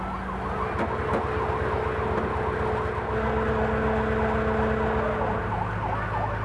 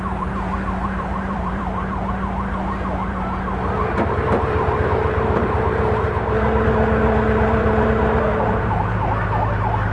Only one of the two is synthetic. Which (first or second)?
second